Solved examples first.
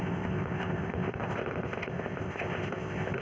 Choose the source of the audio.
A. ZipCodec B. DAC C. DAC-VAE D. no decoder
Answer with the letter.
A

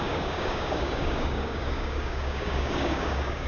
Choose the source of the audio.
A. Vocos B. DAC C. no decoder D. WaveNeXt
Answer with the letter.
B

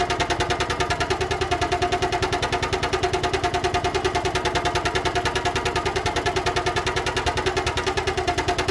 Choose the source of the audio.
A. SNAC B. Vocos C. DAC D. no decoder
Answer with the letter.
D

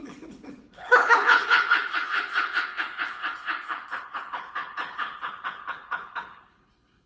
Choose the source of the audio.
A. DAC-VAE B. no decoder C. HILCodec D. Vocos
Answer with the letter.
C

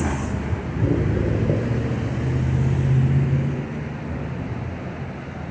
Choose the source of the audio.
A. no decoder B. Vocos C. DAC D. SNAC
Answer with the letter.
A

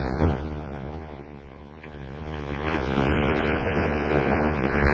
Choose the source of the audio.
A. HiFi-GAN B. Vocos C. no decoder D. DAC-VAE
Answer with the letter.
B